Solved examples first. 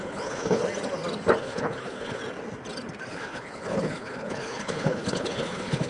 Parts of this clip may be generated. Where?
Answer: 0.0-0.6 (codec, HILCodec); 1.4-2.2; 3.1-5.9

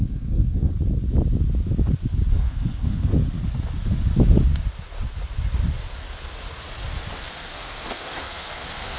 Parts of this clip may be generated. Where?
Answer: 0.0-0.7 (codec, SNAC); 2.3-3.1; 7.2-9.0

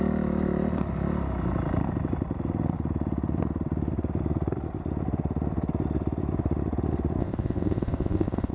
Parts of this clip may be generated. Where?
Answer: 7.2-8.5 (codec, ZipCodec)

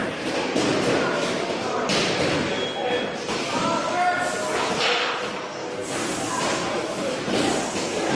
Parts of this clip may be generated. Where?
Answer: none

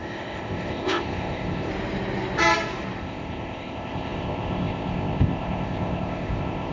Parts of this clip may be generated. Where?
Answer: 0.0-1.7 (codec, ZipCodec); 3.0-6.7

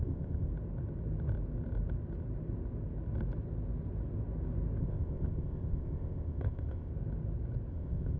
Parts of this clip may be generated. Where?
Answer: 0.0-0.5 (codec, ZipCodec); 4.8-6.9; 7.7-8.2

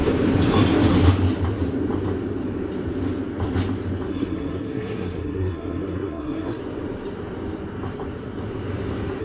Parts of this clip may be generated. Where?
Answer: 4.1-6.6 (codec, SNAC)